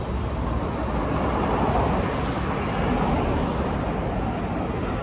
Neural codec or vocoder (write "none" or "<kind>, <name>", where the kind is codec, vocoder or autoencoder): none